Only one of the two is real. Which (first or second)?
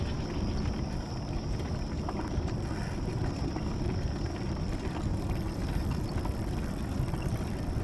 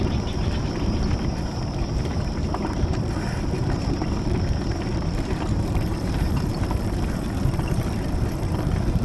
first